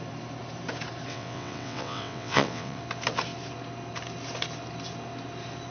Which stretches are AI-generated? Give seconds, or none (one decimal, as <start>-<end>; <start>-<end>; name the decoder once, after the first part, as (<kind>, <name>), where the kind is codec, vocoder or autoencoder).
1.1-2.8 (vocoder, WaveNeXt)